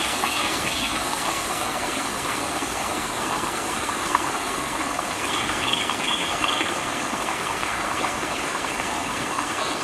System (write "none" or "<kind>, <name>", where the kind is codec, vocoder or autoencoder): codec, SNAC